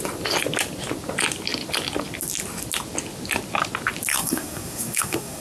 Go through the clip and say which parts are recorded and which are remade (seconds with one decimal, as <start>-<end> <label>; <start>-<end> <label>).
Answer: 0.0-4.1 recorded; 4.1-5.4 remade